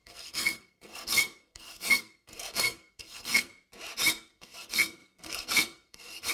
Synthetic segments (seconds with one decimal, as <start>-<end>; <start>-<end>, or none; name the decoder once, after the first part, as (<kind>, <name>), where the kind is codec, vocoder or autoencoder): 0.0-3.5 (codec, SNAC); 4.1-6.3

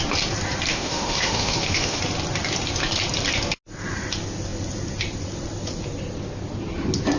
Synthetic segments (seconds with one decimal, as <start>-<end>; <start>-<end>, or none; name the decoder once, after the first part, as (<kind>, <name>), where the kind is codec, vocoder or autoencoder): 0.7-2.0 (autoencoder, DAC-VAE)

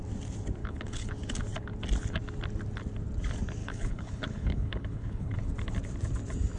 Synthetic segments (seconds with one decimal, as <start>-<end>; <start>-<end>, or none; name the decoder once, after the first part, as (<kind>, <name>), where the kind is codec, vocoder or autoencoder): 0.6-1.1 (codec, HILCodec); 3.6-5.5

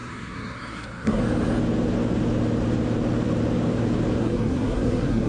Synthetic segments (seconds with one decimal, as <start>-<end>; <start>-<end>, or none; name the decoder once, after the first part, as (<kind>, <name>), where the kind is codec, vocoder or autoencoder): 0.0-1.2 (codec, SNAC); 4.2-5.3

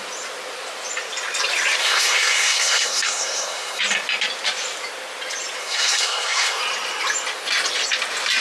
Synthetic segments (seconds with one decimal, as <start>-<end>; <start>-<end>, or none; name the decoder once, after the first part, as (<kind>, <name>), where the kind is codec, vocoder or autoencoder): 1.8-3.8 (codec, SNAC); 5.6-6.6

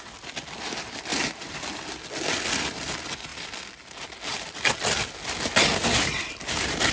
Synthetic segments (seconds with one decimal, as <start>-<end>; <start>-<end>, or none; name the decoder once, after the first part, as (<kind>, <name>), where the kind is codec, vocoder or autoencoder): none

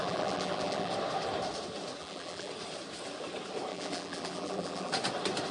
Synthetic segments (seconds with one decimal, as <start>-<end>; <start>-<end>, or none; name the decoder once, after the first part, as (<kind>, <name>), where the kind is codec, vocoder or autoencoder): 0.0-0.9 (vocoder, BigVGAN v2); 2.0-2.5; 3.7-4.9

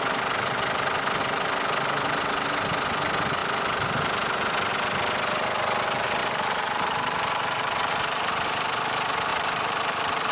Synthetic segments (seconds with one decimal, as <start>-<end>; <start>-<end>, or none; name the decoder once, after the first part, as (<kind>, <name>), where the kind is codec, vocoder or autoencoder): 6.2-8.3 (vocoder, BigVGAN v2); 9.3-10.3